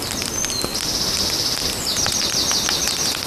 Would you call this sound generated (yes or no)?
no